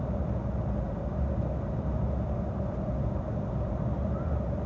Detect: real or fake real